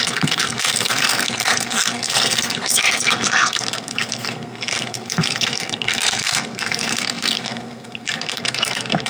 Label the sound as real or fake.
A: fake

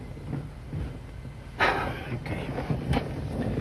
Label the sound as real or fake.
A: real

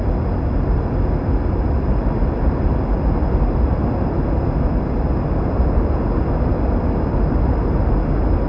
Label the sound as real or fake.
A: real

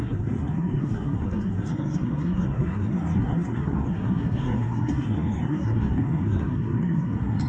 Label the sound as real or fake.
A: fake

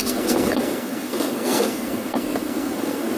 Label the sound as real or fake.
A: fake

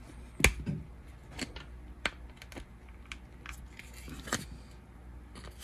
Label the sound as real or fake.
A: real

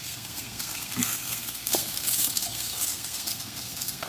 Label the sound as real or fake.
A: fake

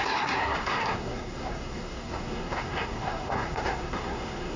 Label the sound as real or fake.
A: fake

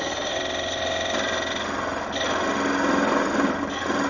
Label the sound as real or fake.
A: real